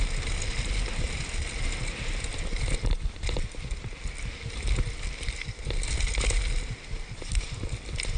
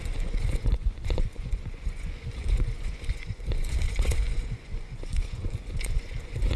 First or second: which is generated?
second